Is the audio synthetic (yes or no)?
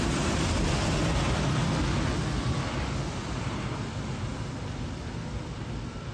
no